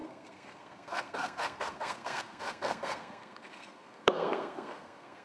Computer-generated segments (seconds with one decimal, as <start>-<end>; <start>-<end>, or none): 0.0-5.2